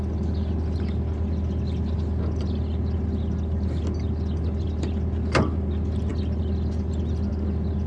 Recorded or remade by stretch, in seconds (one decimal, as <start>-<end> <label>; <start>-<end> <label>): 0.0-7.9 recorded